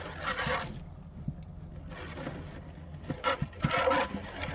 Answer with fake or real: real